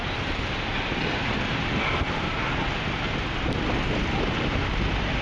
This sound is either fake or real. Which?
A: real